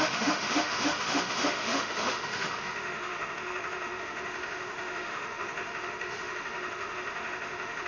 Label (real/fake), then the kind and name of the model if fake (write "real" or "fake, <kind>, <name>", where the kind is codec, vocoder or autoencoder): fake, autoencoder, DAC-VAE